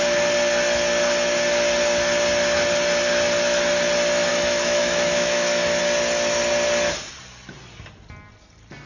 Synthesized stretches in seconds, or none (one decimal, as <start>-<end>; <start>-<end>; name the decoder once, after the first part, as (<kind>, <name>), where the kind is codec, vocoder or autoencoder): 4.3-5.8 (autoencoder, DAC-VAE)